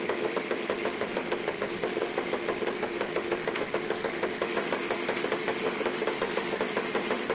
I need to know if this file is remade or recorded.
remade